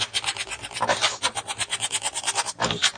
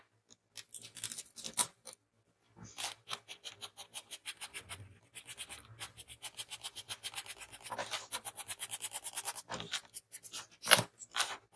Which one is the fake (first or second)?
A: first